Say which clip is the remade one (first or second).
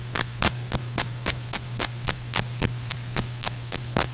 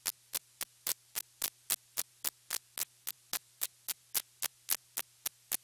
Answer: first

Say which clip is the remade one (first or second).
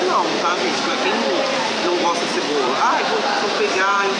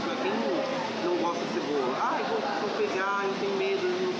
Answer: first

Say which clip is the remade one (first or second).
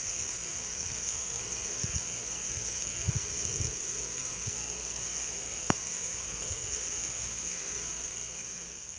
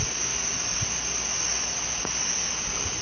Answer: first